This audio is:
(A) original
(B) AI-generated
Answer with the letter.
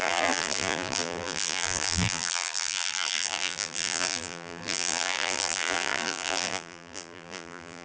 B